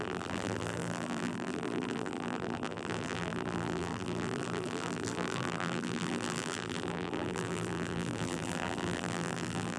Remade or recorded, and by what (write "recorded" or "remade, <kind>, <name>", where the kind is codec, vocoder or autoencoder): remade, vocoder, BigVGAN v2